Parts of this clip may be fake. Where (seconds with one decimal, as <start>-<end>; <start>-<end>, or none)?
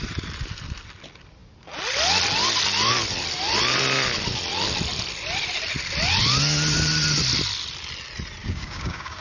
8.4-9.2